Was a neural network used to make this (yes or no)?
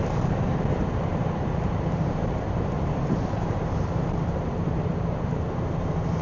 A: yes